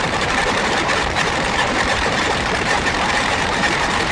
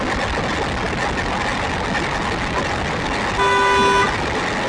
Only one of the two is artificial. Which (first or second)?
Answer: first